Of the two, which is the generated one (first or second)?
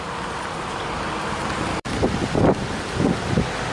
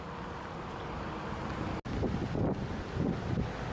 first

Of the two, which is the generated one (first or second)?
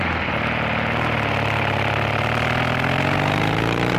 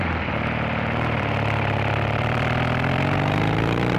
second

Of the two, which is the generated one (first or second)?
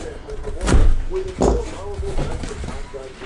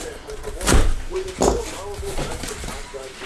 second